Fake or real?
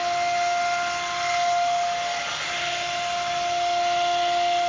real